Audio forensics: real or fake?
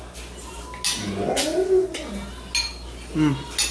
real